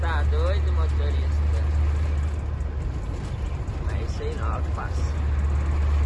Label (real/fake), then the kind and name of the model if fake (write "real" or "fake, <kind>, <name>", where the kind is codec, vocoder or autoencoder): real